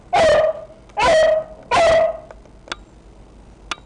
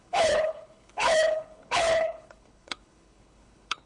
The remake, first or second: second